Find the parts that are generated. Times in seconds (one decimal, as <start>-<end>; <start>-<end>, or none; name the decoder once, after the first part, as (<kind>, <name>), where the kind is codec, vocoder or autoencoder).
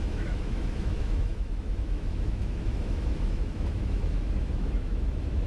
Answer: 0.0-5.5 (autoencoder, DAC-VAE)